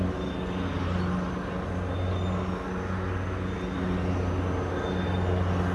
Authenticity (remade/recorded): recorded